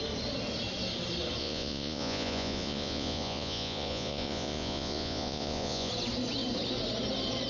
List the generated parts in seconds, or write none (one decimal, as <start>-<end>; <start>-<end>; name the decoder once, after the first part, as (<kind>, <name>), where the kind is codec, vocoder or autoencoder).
1.4-5.9 (vocoder, Vocos)